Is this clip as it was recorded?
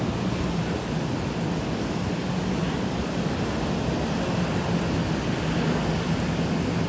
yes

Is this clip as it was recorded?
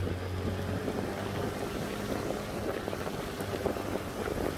yes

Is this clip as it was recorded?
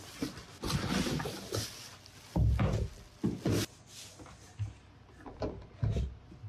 yes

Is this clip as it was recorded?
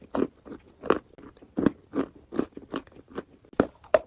yes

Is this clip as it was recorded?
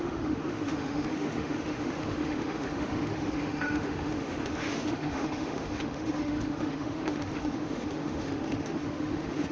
no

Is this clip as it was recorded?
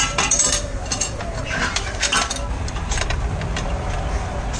yes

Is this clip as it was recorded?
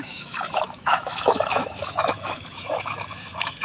no